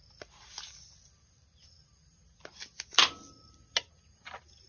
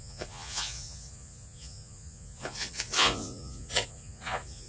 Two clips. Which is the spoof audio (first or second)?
second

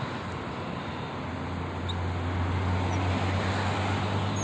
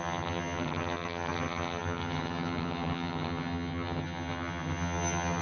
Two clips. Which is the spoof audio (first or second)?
second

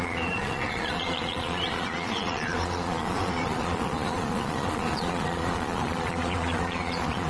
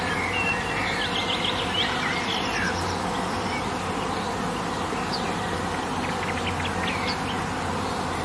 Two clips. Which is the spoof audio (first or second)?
first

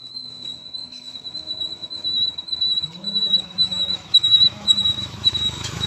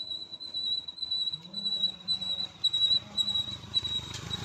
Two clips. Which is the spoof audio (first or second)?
first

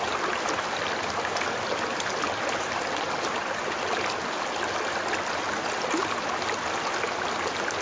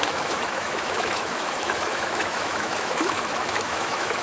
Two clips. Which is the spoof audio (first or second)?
second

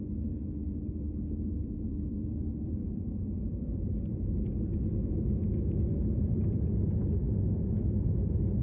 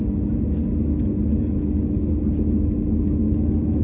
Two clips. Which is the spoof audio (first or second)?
first